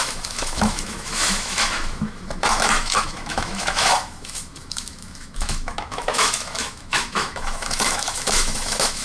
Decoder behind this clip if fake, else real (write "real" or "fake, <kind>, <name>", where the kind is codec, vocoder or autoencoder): fake, autoencoder, DAC-VAE